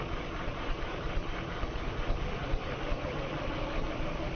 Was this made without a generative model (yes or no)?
yes